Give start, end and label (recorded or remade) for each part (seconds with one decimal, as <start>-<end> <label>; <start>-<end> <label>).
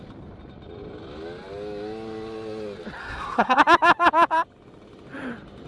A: 0.0-3.0 recorded; 3.0-3.6 remade; 3.6-5.7 recorded